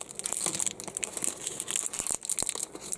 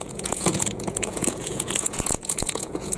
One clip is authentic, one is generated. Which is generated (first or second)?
second